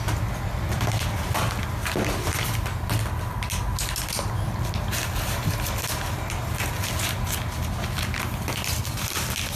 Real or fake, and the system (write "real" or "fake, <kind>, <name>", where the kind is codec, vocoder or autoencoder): real